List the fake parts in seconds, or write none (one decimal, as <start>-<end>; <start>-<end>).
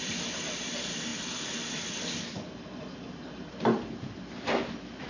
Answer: 0.0-5.1